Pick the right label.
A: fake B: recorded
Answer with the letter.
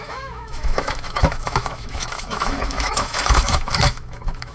A